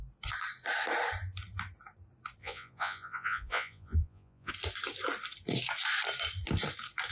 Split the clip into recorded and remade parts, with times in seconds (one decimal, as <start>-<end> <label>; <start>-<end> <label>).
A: 0.0-2.4 recorded; 2.4-4.5 remade; 4.5-7.1 recorded